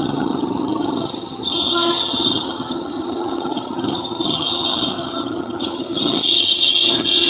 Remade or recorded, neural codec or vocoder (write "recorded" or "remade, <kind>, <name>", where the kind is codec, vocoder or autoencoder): remade, vocoder, HiFi-GAN